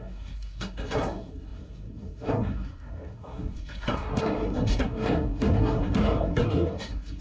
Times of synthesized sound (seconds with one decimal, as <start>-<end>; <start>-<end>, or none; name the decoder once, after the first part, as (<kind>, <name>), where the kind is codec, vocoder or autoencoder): 0.0-7.2 (codec, SNAC)